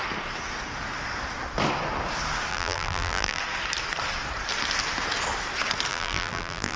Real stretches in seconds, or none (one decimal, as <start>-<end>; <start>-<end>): 0.0-2.5; 3.4-5.9